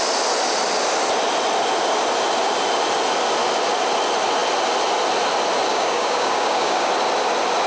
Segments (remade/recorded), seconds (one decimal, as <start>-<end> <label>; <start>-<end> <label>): 0.0-5.7 recorded; 5.7-6.9 remade; 6.9-7.7 recorded